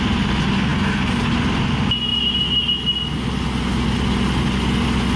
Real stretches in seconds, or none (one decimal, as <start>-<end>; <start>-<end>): 0.0-5.2